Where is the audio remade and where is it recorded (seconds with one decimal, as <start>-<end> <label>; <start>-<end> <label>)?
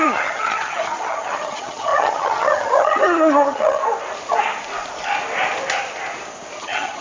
0.0-3.8 remade; 3.8-6.6 recorded; 6.6-7.0 remade